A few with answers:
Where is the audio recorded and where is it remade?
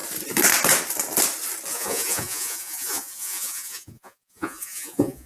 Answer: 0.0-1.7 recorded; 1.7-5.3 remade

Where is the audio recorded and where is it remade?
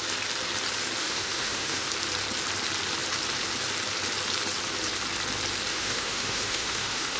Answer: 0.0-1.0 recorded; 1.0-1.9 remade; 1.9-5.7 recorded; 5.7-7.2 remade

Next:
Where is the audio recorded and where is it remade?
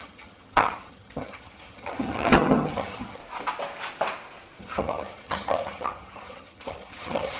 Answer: 0.0-3.2 remade; 3.2-4.6 recorded; 4.6-7.4 remade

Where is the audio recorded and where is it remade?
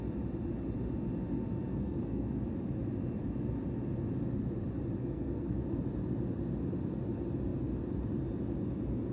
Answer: 0.0-1.7 recorded; 1.7-2.3 remade; 2.3-5.0 recorded; 5.0-5.6 remade; 5.6-9.1 recorded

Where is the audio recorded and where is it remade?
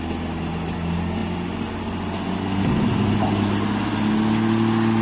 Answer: 0.0-5.0 recorded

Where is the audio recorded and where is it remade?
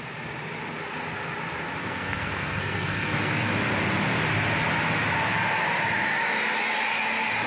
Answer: 0.0-1.8 recorded; 1.8-3.5 remade; 3.5-7.5 recorded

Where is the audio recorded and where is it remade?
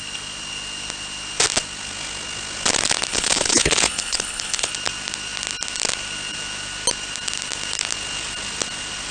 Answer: 0.0-3.1 recorded; 3.1-4.7 remade; 4.7-9.1 recorded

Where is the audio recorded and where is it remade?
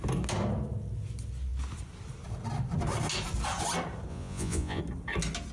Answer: 0.0-4.1 recorded; 4.1-4.8 remade; 4.8-5.5 recorded